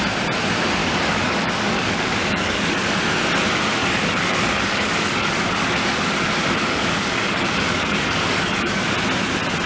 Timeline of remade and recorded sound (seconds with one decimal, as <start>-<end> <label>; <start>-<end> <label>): 0.0-0.8 recorded; 0.8-3.0 remade; 3.0-3.8 recorded; 3.8-8.8 remade; 8.8-9.7 recorded